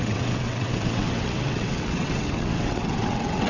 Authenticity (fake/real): fake